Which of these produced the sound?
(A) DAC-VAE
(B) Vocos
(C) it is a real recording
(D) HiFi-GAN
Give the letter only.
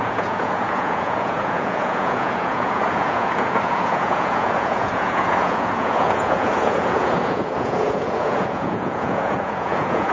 B